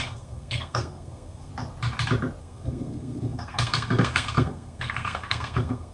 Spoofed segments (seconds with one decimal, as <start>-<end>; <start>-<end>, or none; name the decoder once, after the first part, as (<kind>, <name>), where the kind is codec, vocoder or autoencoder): 0.0-1.5 (codec, SNAC); 2.4-5.9